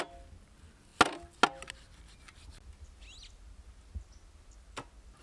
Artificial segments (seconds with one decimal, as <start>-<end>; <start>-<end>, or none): none